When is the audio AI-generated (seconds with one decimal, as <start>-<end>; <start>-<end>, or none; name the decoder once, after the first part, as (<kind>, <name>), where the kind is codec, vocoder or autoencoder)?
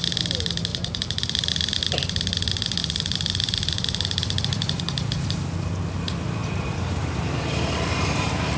0.7-1.8 (vocoder, BigVGAN v2); 2.8-4.8; 6.4-8.6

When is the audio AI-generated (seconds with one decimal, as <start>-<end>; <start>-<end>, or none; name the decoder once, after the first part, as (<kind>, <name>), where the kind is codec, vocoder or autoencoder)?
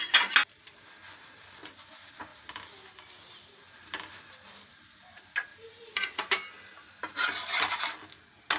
5.5-6.5 (vocoder, BigVGAN v2)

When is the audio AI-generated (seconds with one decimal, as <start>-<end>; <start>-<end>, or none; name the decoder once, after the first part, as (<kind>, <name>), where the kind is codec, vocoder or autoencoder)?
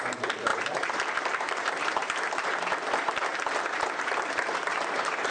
0.5-1.6 (vocoder, BigVGAN v2); 3.3-4.4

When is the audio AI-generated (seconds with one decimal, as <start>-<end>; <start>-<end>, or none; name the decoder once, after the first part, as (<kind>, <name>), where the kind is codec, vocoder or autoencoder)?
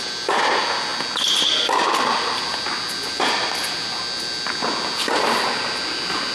none